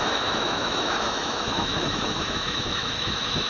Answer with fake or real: fake